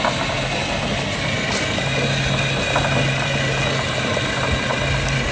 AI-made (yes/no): no